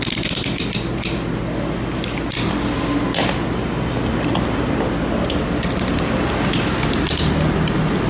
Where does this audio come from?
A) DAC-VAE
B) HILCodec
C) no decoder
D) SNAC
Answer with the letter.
C